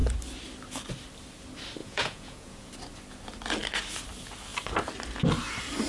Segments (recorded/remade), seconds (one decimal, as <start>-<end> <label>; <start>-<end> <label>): 0.0-1.8 recorded; 1.8-2.7 remade; 2.7-5.9 recorded